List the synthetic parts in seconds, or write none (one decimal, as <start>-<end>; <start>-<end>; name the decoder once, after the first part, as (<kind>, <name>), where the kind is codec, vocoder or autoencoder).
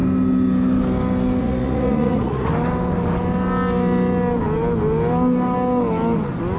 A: 1.4-2.5 (vocoder, Vocos)